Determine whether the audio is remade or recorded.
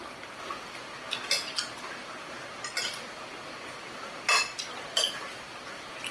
recorded